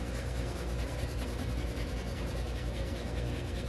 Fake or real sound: fake